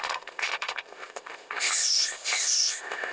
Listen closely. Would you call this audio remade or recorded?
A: remade